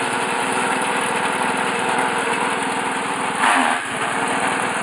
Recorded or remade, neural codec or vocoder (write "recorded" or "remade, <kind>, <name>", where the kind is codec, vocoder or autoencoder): recorded